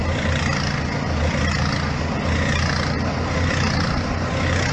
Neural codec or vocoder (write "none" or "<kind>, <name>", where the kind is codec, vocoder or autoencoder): none